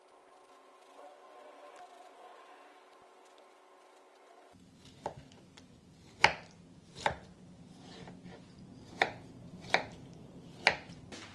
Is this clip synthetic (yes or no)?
no